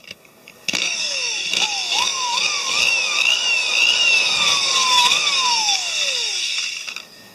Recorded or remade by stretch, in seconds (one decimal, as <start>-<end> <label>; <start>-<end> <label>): 0.0-7.3 remade